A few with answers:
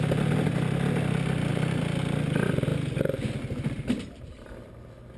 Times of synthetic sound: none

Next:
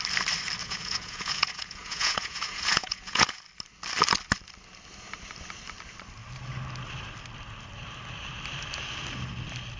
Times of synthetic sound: 0.6-3.4 (vocoder, Vocos)

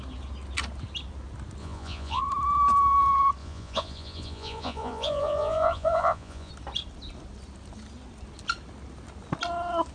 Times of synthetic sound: 1.6-2.2 (vocoder, Vocos); 3.4-6.5

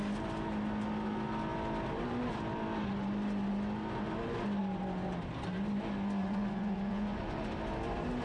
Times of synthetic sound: 6.2-7.5 (vocoder, Vocos)

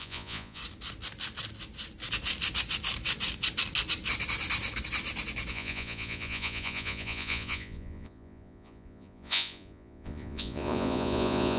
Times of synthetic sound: 0.0-0.6 (vocoder, Vocos); 5.5-11.6

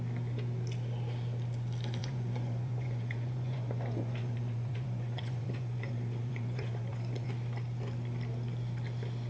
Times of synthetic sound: 2.0-7.3 (vocoder, Vocos)

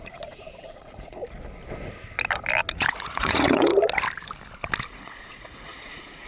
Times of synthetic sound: 0.0-1.2 (vocoder, Vocos); 2.7-3.7; 4.9-6.3

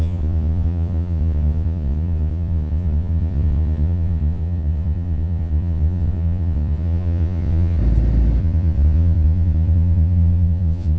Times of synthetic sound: 0.0-7.8 (vocoder, Vocos); 8.4-11.0